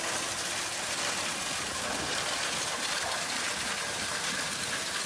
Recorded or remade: recorded